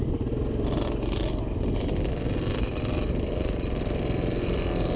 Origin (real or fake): real